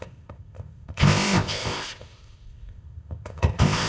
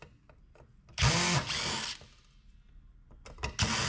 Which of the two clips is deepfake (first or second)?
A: first